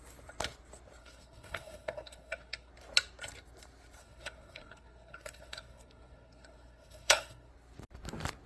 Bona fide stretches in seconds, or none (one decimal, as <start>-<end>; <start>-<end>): 0.0-1.0; 2.7-4.0; 7.5-8.5